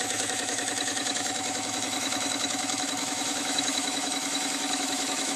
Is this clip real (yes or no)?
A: no